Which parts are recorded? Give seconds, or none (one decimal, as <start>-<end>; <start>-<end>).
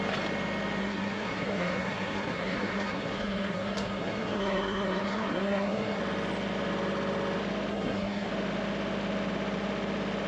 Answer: 0.0-0.8; 6.0-7.7; 8.3-10.3